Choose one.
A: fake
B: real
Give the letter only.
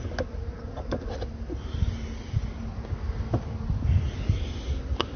B